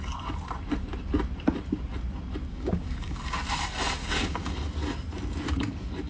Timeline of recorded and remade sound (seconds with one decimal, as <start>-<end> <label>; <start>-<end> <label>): 0.0-2.5 recorded; 2.5-3.2 remade; 3.2-4.0 recorded; 4.0-4.5 remade; 4.5-6.1 recorded